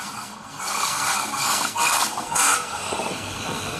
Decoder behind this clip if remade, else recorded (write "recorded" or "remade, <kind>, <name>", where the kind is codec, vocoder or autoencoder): remade, codec, SNAC